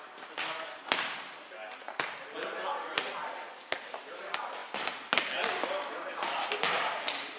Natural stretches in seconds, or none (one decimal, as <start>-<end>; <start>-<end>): 0.0-7.4